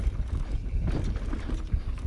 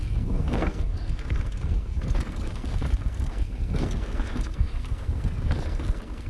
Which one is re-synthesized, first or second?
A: second